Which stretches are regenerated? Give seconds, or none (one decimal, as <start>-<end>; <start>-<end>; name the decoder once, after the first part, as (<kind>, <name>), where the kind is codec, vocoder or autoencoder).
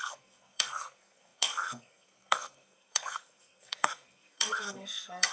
0.0-5.3 (codec, SNAC)